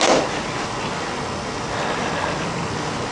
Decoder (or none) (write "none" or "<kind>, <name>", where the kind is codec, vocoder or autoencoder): none